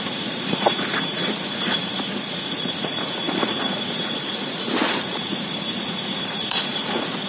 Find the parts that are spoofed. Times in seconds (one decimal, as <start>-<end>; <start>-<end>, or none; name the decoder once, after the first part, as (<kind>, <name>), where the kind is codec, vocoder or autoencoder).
0.0-7.3 (vocoder, Vocos)